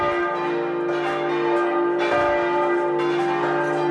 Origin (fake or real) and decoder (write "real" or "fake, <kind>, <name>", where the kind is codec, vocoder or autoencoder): real